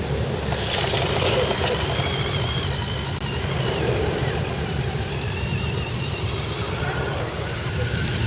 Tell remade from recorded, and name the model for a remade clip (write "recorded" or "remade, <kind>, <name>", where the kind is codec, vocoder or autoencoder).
recorded